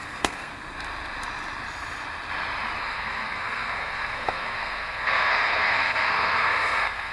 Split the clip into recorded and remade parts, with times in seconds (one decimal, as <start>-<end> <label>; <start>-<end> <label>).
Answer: 0.0-0.5 remade; 0.5-2.8 recorded; 2.8-7.1 remade